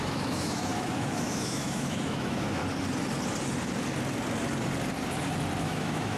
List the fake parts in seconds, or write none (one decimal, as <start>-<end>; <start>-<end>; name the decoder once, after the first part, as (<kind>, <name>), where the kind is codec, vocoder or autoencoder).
0.0-2.6 (autoencoder, DAC-VAE); 5.6-6.2

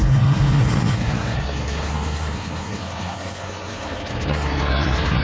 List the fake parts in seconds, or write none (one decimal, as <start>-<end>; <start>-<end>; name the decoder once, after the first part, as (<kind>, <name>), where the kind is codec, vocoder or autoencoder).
0.0-5.2 (codec, SNAC)

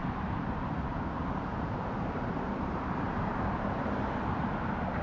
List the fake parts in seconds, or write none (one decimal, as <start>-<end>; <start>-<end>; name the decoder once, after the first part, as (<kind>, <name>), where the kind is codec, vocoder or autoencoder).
0.0-0.5 (vocoder, BigVGAN v2); 1.5-4.5

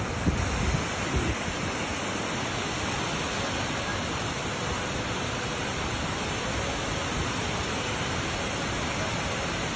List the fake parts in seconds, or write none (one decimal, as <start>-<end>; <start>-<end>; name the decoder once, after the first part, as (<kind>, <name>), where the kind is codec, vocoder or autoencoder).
none

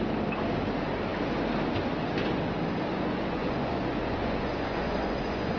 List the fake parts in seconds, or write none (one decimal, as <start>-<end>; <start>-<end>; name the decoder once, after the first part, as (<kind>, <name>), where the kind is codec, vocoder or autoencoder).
2.9-5.6 (vocoder, Vocos)

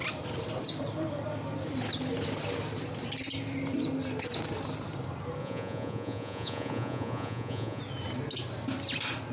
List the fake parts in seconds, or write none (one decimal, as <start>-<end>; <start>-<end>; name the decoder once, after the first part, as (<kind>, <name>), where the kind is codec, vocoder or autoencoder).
5.4-7.8 (vocoder, Vocos)

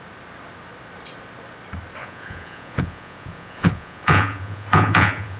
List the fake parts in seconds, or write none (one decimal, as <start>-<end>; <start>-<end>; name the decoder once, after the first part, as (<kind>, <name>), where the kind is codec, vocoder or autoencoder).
2.0-5.4 (vocoder, Vocos)